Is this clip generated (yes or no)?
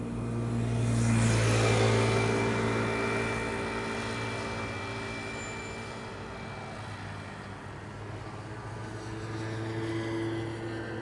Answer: no